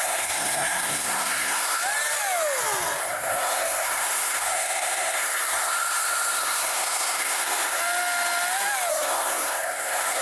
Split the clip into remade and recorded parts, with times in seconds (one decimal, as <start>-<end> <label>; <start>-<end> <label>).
0.0-1.8 remade; 1.8-3.0 recorded; 3.0-7.8 remade; 7.8-8.9 recorded; 8.9-10.2 remade